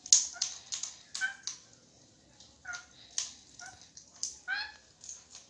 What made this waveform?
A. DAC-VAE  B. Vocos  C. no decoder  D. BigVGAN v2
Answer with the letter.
C